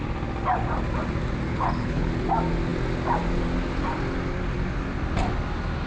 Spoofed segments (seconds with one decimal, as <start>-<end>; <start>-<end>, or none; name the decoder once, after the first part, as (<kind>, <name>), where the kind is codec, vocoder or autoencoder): 1.5-2.1 (codec, HILCodec)